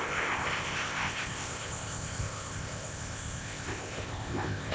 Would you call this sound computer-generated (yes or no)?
yes